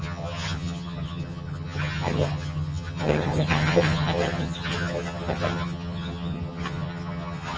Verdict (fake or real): fake